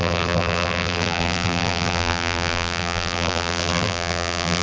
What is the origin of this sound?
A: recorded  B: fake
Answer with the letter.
B